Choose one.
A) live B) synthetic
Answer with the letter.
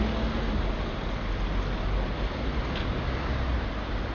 A